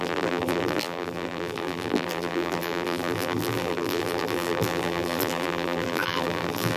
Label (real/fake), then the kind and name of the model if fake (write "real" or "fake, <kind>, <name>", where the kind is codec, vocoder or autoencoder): fake, vocoder, BigVGAN v2